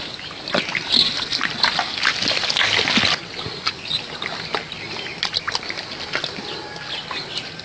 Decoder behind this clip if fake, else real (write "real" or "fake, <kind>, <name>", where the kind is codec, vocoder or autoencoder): real